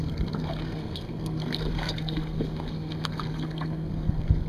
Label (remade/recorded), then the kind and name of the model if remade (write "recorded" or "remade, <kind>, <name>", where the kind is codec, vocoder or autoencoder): remade, codec, SNAC